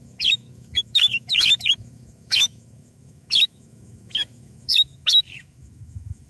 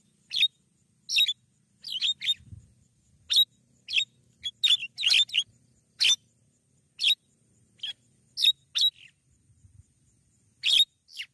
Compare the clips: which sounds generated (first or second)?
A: first